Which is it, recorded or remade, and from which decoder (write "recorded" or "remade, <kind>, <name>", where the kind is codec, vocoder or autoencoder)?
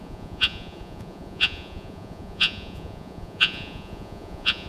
remade, vocoder, Vocos